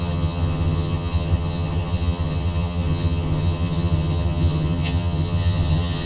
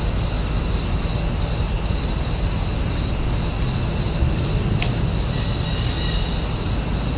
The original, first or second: second